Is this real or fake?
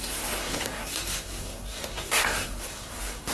fake